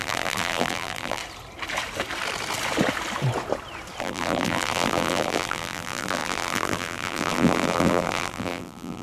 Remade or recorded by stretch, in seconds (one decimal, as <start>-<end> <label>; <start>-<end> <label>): 0.0-1.2 remade; 1.2-4.0 recorded; 4.0-9.0 remade